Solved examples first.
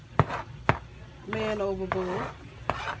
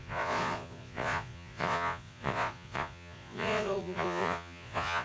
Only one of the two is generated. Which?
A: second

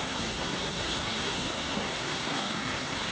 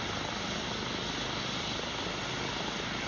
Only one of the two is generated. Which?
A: first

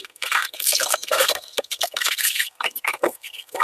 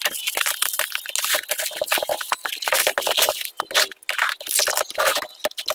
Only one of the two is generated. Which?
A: first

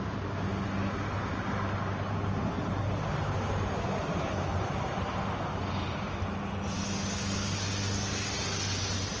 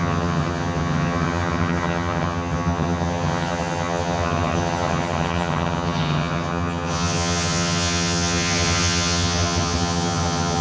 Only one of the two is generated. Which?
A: second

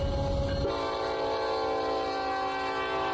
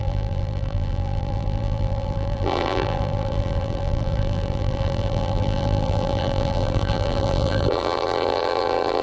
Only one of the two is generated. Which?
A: second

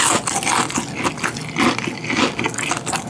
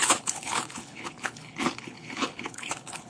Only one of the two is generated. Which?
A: second